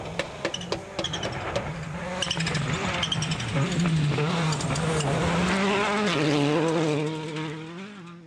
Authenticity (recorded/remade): recorded